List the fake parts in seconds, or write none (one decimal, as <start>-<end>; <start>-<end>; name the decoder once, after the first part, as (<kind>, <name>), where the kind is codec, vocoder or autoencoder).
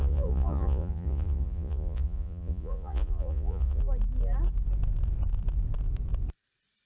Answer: 0.0-3.8 (vocoder, Vocos)